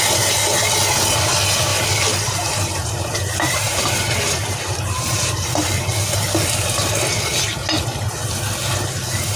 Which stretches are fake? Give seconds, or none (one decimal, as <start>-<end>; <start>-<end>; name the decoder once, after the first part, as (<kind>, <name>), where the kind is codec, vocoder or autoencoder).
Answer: 1.7-5.5 (vocoder, BigVGAN v2)